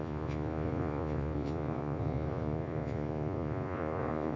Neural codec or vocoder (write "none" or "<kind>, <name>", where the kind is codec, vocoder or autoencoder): vocoder, Vocos